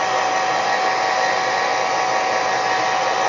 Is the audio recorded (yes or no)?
yes